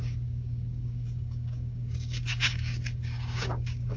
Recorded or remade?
remade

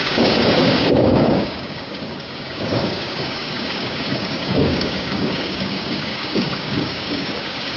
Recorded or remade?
remade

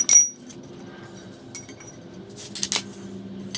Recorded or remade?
recorded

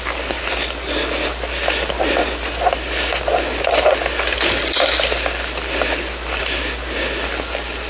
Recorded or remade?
recorded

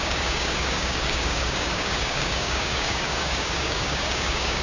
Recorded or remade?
remade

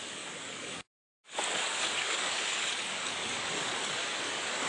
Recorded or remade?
remade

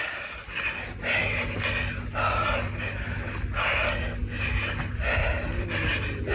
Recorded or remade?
recorded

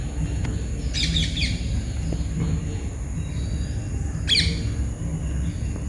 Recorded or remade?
recorded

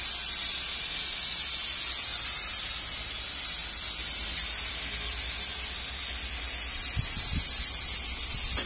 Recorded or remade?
recorded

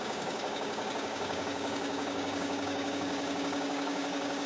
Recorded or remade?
remade